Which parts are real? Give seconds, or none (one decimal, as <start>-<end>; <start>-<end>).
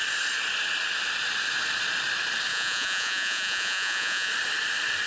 0.0-2.5; 4.3-5.1